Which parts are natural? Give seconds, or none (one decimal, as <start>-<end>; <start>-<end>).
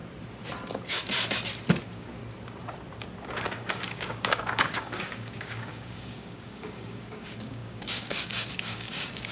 0.0-1.8; 2.2-3.2